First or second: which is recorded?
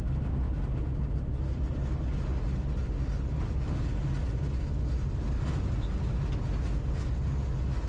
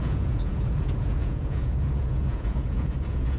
first